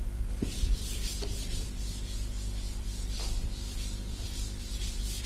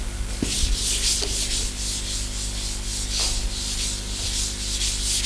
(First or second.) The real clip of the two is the second